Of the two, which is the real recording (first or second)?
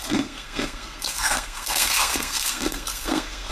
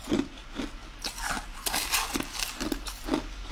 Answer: second